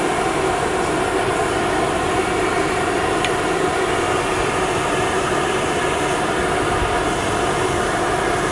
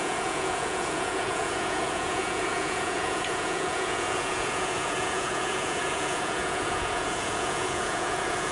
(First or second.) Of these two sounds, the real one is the first